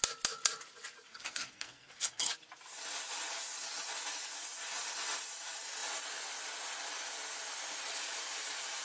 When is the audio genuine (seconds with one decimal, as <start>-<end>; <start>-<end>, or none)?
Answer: 0.0-1.1; 2.3-8.8